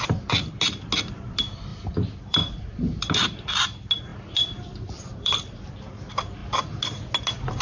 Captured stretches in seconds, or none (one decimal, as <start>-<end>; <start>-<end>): 0.0-1.7; 3.0-4.1; 5.7-7.6